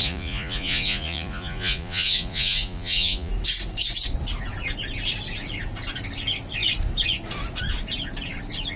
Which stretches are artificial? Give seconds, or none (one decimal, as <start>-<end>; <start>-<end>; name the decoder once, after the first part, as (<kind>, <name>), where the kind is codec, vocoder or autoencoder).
0.0-3.3 (vocoder, Vocos)